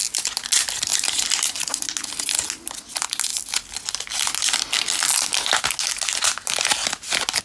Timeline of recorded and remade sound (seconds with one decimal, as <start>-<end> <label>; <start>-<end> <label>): 0.0-7.4 recorded